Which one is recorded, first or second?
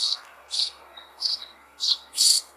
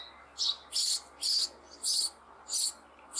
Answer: second